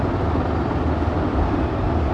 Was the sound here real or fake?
real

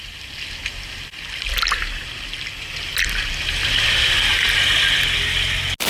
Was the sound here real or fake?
real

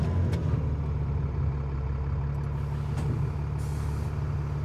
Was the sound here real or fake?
real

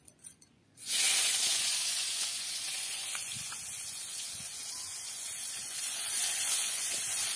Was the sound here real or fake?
fake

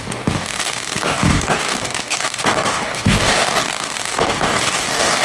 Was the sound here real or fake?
fake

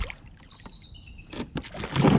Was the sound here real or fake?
real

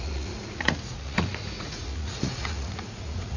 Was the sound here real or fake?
fake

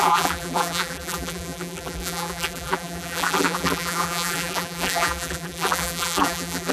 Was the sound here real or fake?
fake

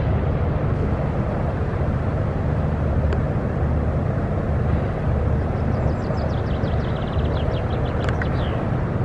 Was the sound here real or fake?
real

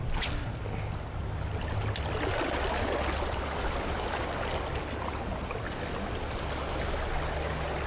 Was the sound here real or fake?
real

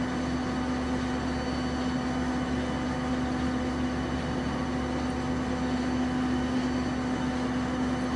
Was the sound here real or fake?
real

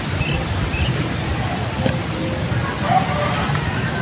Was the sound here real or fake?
real